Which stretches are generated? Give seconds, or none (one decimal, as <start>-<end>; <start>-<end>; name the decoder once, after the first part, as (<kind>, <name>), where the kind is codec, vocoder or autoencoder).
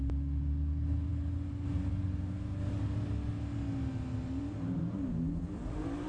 none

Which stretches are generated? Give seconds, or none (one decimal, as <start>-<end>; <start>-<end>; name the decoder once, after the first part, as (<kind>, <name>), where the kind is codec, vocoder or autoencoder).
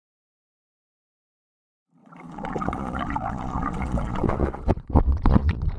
2.0-5.8 (vocoder, Vocos)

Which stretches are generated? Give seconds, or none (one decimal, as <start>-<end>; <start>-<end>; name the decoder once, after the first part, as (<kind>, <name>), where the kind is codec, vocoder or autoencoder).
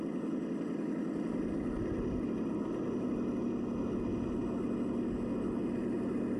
none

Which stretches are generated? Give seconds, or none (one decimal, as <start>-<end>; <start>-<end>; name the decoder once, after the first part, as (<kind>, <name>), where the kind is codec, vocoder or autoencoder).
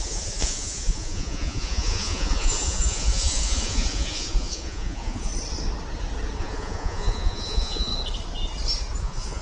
0.0-5.3 (vocoder, Vocos); 6.4-7.9; 9.0-9.4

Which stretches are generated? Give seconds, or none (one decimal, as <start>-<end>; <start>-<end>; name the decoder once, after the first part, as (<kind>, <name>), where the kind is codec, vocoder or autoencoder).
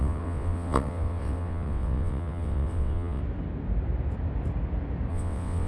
0.0-3.2 (vocoder, WaveNeXt); 5.1-5.7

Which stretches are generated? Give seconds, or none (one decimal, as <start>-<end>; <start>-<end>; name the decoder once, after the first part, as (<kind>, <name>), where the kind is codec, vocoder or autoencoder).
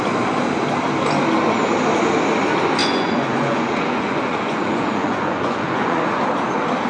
2.8-6.2 (vocoder, Vocos)